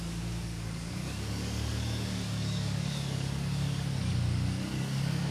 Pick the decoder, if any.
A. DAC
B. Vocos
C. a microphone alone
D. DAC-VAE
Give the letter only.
A